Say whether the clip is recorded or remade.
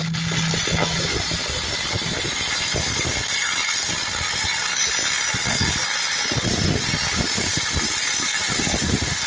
recorded